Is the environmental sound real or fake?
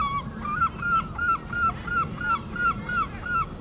real